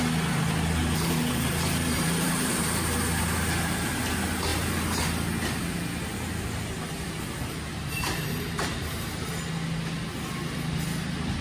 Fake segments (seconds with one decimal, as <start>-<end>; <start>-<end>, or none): 0.8-3.0; 7.7-9.3